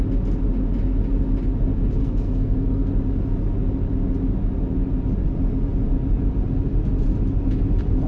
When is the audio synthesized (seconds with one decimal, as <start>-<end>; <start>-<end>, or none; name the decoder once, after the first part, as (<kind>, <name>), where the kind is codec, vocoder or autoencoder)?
2.0-2.9 (codec, SNAC)

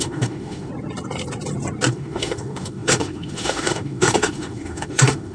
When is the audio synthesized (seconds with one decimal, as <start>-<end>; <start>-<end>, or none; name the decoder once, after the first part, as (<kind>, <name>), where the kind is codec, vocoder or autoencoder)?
0.0-0.7 (autoencoder, DAC-VAE); 1.9-5.3

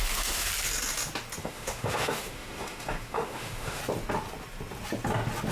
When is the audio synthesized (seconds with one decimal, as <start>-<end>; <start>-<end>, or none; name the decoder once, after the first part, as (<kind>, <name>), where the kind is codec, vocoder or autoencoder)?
0.0-0.5 (autoencoder, DAC-VAE); 1.4-3.8

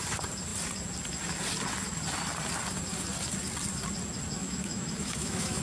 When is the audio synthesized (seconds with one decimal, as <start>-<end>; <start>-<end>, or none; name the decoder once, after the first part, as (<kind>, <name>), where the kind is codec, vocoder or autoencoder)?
4.4-5.6 (autoencoder, DAC-VAE)

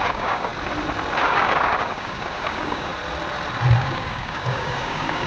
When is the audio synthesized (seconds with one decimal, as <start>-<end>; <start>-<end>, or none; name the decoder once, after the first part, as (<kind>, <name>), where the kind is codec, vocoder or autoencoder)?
0.0-0.5 (codec, DAC); 1.2-2.9; 3.8-5.3

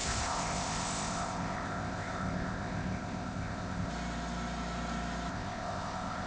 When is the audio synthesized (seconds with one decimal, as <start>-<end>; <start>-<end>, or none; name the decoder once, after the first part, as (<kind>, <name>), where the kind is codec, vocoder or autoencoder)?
0.0-3.9 (codec, ZipCodec); 5.3-6.3

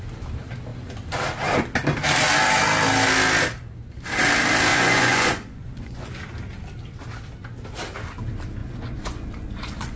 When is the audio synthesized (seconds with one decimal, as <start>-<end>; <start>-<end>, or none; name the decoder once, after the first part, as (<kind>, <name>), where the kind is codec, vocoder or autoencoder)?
4.7-6.1 (vocoder, Vocos); 8.6-10.0